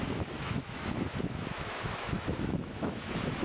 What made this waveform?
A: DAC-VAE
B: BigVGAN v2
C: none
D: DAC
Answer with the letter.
A